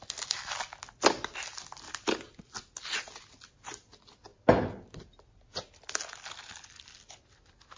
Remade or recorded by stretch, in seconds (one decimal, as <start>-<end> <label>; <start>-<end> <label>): 0.0-7.8 recorded